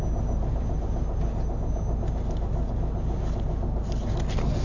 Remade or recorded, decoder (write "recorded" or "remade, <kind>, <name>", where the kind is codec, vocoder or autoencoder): recorded